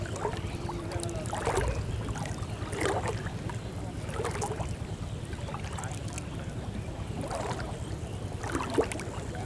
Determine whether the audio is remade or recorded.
recorded